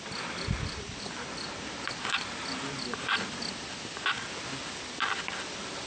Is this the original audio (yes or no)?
yes